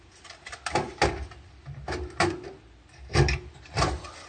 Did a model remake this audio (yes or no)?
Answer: no